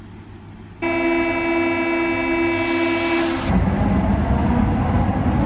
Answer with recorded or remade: recorded